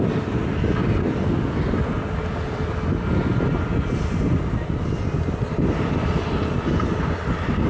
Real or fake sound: real